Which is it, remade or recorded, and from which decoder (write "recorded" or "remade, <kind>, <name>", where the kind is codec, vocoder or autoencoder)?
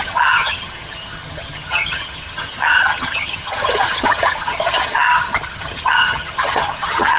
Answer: remade, vocoder, HiFi-GAN